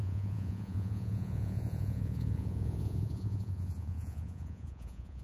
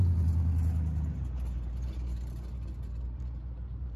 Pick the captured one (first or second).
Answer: second